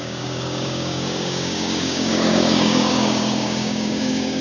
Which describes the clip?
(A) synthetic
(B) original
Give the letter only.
A